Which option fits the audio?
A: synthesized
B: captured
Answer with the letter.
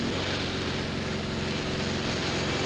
B